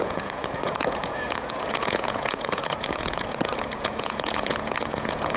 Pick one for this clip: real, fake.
fake